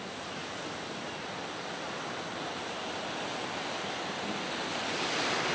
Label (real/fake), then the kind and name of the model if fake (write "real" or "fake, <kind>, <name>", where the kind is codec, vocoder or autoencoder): real